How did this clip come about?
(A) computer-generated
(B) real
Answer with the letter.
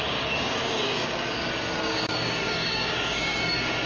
A